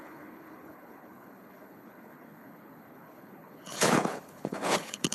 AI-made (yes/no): yes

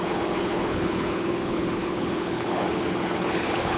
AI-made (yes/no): yes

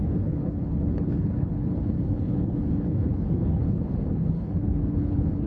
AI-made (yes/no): yes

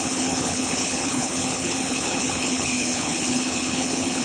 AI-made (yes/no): yes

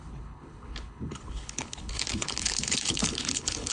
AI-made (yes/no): yes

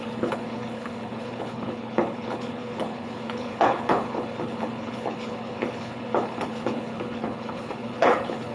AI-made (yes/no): yes